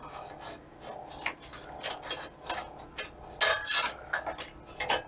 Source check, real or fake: real